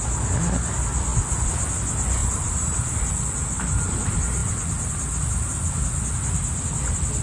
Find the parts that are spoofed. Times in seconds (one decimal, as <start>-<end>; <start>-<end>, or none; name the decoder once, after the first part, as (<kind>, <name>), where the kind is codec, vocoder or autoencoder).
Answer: 2.2-3.1 (vocoder, BigVGAN v2)